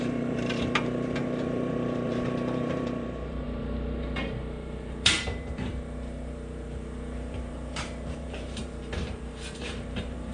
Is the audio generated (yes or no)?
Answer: yes